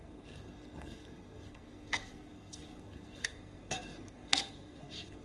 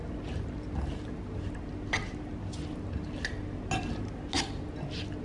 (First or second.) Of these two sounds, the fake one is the first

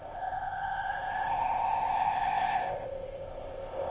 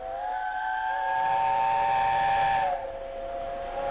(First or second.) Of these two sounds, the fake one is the first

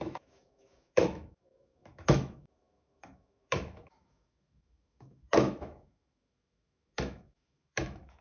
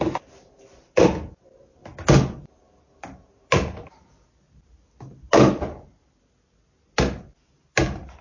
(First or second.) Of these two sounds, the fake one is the first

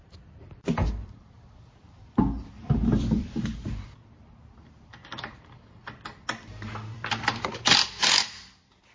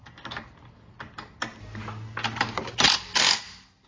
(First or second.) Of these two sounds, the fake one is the first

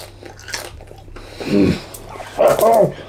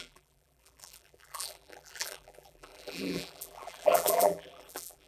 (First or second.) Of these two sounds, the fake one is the second